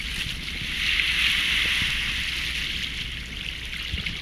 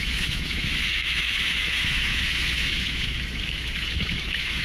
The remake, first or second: second